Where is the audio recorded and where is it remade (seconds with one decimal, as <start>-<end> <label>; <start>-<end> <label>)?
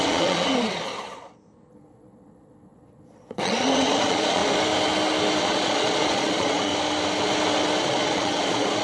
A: 0.0-0.9 remade; 0.9-1.7 recorded; 1.7-4.4 remade; 4.4-5.4 recorded; 5.4-6.7 remade; 6.7-7.8 recorded; 7.8-8.8 remade